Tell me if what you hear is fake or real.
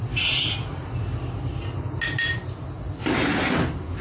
real